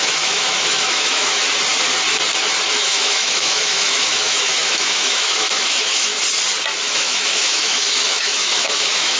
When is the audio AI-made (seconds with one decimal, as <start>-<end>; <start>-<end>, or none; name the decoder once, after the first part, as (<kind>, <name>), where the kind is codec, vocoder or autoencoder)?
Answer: 0.0-1.4 (autoencoder, DAC-VAE); 2.7-6.1; 6.8-9.2